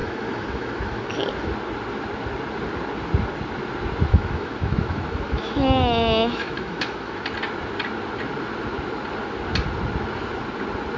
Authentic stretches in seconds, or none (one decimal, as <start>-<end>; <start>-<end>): 1.1-4.1; 7.2-11.0